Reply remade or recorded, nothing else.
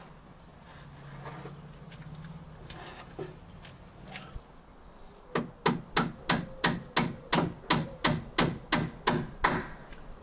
recorded